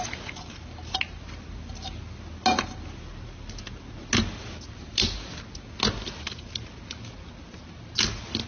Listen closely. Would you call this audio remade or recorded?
recorded